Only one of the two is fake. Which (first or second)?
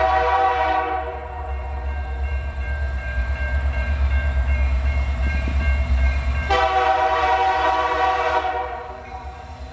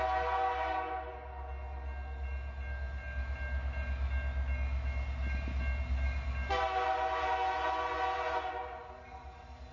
first